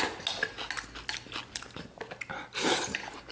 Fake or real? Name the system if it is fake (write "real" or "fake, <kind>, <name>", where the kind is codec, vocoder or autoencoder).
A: real